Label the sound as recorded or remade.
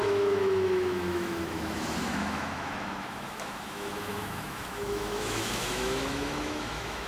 remade